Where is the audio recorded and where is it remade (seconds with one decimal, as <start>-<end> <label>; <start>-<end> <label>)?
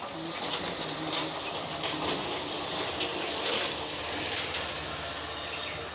0.0-5.9 recorded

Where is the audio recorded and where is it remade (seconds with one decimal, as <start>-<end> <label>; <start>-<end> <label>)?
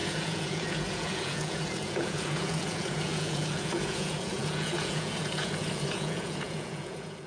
0.0-7.3 remade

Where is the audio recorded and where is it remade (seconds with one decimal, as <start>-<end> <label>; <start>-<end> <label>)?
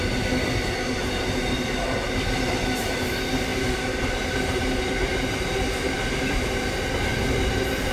0.0-3.5 recorded; 3.5-6.7 remade; 6.7-7.9 recorded